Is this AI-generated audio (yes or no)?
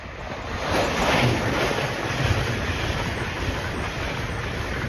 no